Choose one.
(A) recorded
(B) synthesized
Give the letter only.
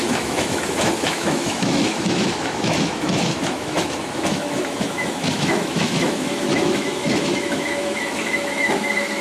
B